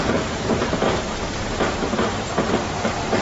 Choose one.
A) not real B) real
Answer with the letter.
A